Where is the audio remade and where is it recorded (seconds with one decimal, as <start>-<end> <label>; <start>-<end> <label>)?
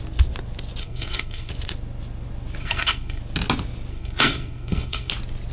0.0-0.8 recorded; 0.8-1.5 remade; 1.5-2.6 recorded; 2.6-3.2 remade; 3.2-3.9 recorded; 3.9-5.1 remade; 5.1-5.5 recorded